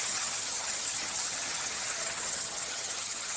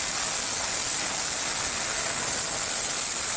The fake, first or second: first